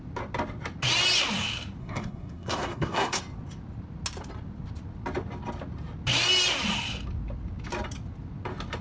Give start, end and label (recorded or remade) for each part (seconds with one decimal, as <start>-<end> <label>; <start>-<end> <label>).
0.0-1.8 recorded; 1.8-3.2 remade; 3.2-8.8 recorded